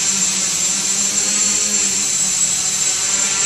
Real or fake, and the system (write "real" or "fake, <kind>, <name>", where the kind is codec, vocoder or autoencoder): fake, vocoder, BigVGAN v2